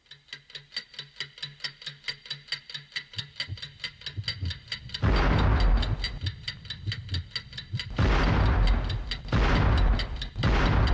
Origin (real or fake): real